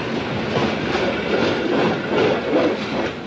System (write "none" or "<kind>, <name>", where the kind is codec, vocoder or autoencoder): none